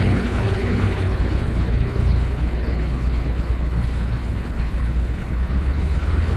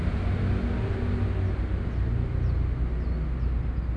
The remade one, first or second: first